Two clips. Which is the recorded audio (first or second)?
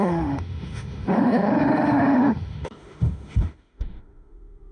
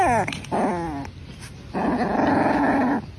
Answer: second